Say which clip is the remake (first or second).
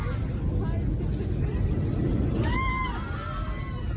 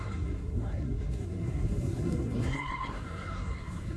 second